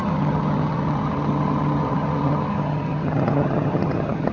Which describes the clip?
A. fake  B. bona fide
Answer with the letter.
A